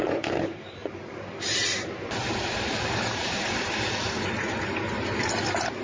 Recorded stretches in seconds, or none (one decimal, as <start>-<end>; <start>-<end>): none